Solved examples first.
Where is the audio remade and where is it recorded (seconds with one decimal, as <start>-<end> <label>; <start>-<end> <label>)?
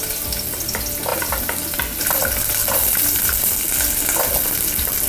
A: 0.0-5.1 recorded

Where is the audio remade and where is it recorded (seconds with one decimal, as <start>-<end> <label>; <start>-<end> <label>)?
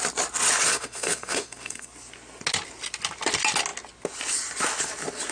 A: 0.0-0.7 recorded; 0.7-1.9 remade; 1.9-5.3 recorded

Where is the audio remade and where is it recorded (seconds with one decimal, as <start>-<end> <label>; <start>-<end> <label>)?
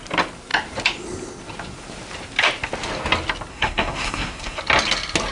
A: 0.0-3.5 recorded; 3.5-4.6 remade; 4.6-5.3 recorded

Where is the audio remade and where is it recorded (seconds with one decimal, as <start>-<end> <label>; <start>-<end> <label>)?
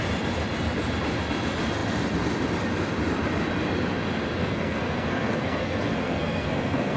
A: 0.0-4.4 recorded; 4.4-7.0 remade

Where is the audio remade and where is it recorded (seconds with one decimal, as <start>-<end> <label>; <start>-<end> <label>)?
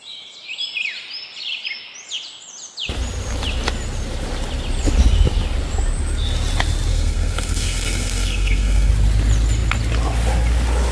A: 0.0-6.9 recorded; 6.9-8.9 remade; 8.9-10.9 recorded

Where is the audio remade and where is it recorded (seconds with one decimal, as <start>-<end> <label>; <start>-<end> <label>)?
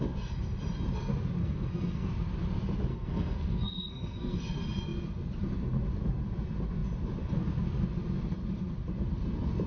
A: 0.0-1.4 recorded; 1.4-2.1 remade; 2.1-2.9 recorded; 2.9-4.4 remade; 4.4-9.7 recorded